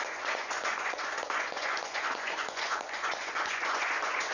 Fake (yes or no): yes